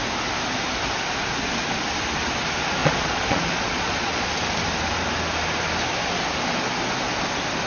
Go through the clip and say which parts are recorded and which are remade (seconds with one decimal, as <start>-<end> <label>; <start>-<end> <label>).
0.0-2.8 recorded; 2.8-4.3 remade; 4.3-7.7 recorded